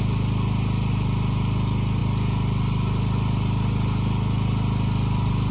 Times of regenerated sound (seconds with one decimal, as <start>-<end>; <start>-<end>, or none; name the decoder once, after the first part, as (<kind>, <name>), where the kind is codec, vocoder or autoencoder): none